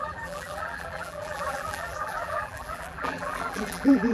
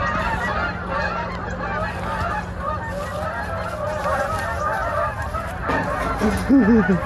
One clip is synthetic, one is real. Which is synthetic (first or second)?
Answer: first